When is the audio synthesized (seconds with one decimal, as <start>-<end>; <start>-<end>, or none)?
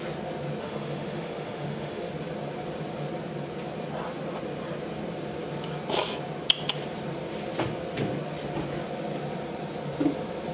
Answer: 0.6-2.1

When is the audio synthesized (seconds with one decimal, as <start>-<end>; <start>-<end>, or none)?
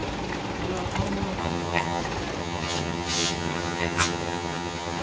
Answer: 1.4-2.0; 2.4-5.0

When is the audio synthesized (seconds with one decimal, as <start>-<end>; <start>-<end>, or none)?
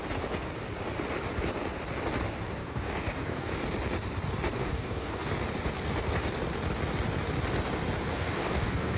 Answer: 2.6-3.5; 4.6-5.3; 8.1-9.0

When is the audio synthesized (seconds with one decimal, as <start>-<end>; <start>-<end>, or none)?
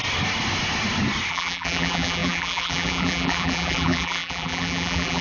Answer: 1.3-5.2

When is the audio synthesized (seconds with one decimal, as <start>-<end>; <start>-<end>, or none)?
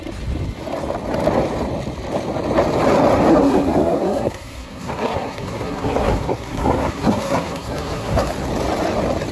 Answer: 3.3-8.3